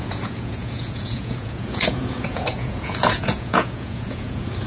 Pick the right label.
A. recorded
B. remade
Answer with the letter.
B